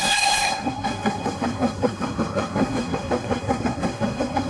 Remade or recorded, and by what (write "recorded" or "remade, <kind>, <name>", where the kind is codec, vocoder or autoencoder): remade, codec, SNAC